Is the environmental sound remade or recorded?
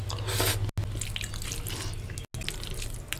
recorded